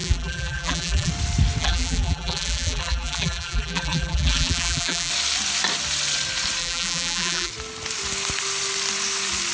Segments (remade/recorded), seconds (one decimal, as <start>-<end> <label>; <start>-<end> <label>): 0.0-1.1 remade; 1.1-1.6 recorded; 1.6-5.1 remade; 5.1-6.6 recorded; 6.6-7.5 remade; 7.5-9.5 recorded